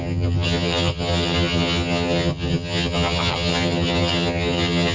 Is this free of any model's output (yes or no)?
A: no